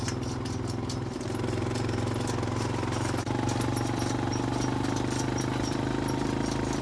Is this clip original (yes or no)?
yes